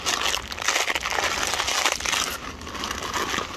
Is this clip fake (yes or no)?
no